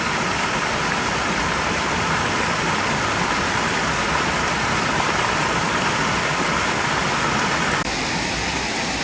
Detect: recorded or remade remade